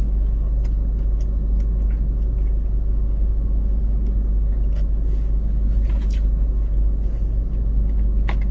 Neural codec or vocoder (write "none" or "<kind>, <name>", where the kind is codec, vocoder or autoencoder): none